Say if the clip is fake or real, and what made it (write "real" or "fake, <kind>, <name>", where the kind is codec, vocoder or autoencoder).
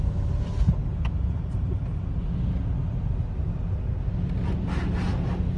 real